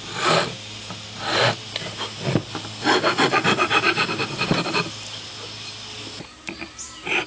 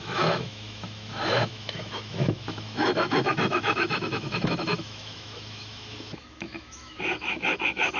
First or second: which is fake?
second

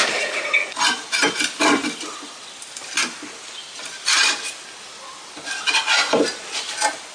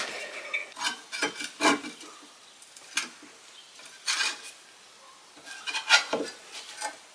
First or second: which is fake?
first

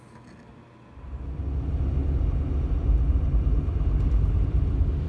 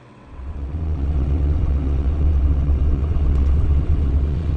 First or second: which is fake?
second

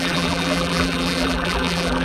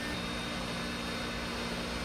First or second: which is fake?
first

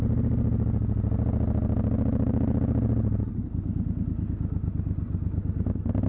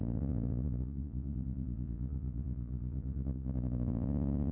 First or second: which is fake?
second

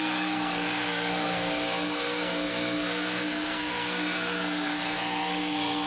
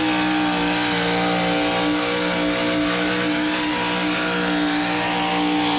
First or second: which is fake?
first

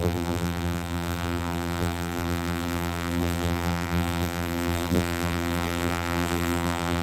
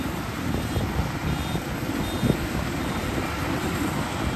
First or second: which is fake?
first